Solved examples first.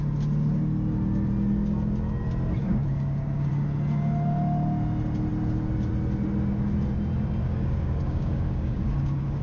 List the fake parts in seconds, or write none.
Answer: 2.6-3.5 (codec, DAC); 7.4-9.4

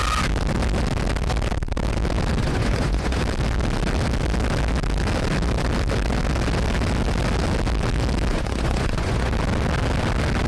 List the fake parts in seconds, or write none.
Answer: 2.4-3.2 (vocoder, Vocos); 8.3-9.3

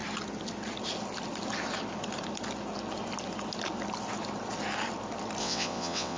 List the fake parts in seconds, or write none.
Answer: 5.4-6.2 (vocoder, WaveNeXt)

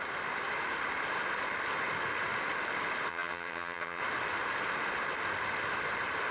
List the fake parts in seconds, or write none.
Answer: 3.1-4.0 (vocoder, HiFi-GAN)

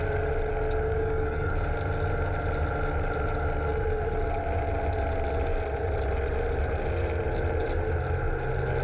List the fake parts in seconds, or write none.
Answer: 0.9-1.5 (codec, DAC)

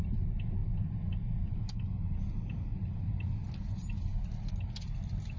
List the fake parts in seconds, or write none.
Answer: none